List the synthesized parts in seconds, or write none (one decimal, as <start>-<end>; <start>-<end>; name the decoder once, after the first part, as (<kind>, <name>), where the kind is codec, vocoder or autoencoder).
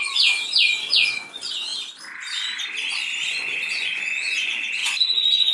0.0-1.7 (vocoder, Vocos); 3.3-5.5